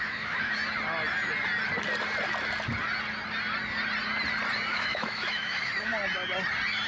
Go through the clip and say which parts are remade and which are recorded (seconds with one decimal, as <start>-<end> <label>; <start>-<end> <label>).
0.0-0.6 remade; 0.6-4.7 recorded; 4.7-5.9 remade; 5.9-6.9 recorded